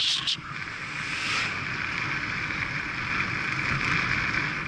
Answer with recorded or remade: recorded